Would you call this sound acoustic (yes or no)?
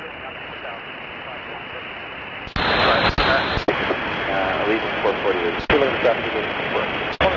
yes